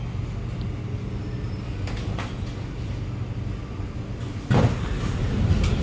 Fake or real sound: real